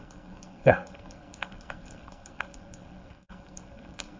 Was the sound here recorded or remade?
remade